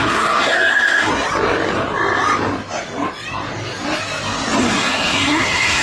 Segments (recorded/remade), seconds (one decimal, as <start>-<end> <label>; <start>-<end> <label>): 0.0-1.1 remade; 1.1-4.6 recorded; 4.6-5.8 remade